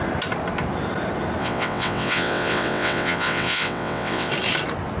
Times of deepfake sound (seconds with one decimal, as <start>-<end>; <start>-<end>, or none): 1.4-4.3